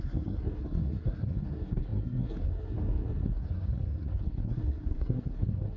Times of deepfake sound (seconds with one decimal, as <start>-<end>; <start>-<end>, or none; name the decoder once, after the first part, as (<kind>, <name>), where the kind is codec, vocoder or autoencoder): 0.0-5.8 (codec, SNAC)